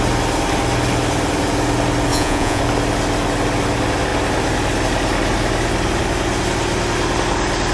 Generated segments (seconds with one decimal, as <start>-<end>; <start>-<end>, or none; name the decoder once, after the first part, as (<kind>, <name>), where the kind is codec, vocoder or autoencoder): 2.1-2.6 (vocoder, Vocos)